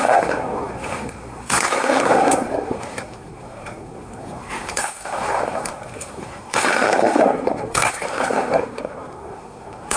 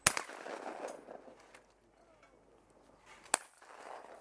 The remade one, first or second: first